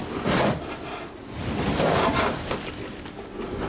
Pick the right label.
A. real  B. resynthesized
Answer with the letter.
A